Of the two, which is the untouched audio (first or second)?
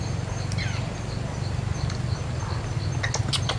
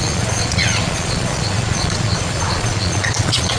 first